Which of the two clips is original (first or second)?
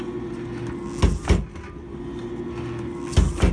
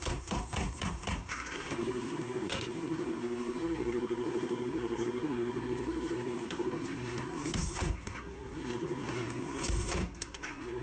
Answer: first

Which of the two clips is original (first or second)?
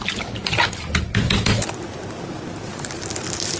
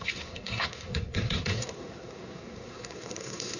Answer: first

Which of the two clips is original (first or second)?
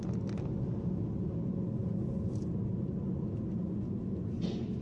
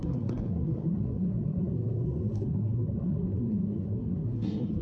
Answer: first